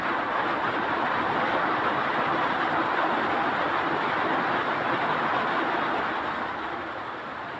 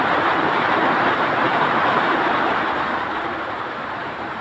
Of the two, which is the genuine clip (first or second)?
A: first